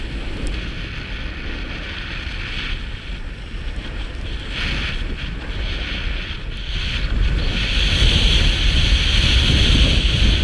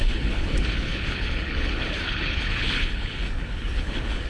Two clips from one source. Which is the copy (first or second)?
second